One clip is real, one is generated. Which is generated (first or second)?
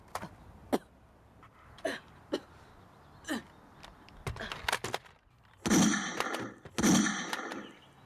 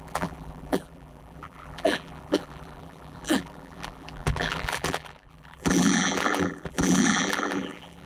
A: second